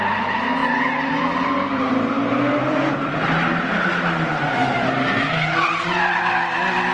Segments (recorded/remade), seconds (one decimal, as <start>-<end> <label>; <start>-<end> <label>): 0.0-6.9 recorded